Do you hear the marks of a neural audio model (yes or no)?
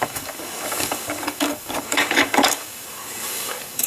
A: yes